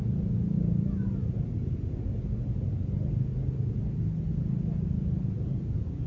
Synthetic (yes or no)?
no